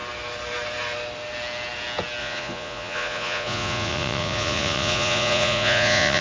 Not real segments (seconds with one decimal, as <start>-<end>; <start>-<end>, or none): 2.2-6.2